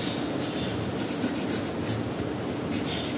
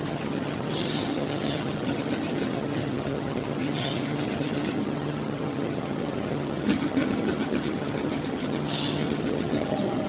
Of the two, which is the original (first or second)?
first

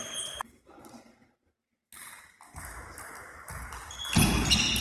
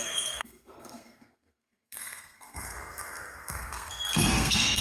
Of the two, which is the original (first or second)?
first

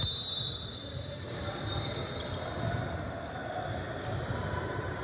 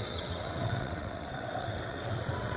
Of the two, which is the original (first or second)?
first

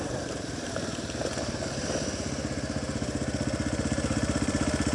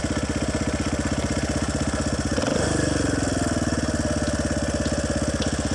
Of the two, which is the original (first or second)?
second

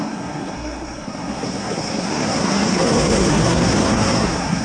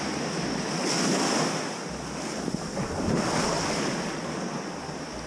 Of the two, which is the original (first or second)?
second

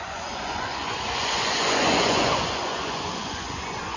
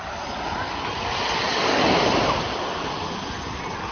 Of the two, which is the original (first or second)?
second